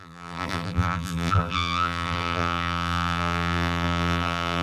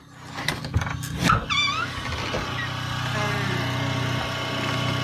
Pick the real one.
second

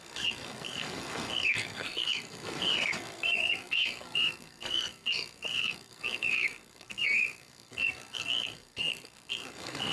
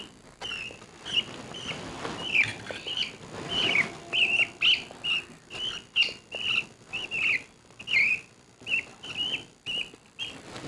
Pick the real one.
second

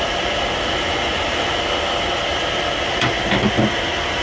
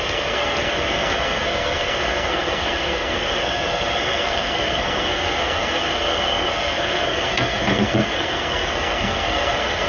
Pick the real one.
first